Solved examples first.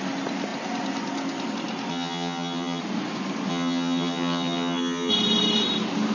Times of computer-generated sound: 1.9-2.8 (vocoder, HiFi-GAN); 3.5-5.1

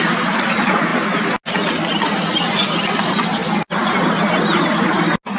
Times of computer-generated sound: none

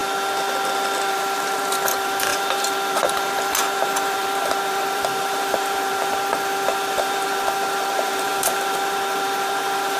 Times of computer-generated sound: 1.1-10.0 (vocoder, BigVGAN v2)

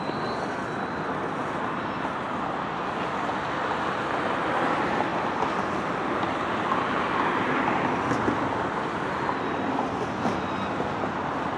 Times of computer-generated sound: none

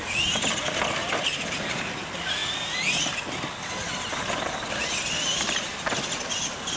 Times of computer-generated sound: none

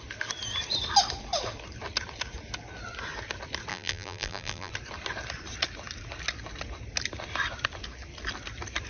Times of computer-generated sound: 3.7-4.7 (vocoder, BigVGAN v2)

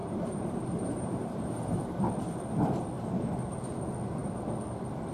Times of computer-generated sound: 0.0-2.1 (vocoder, BigVGAN v2)

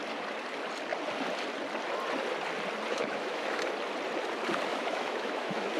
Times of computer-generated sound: 2.9-3.6 (autoencoder, DAC-VAE); 4.7-5.8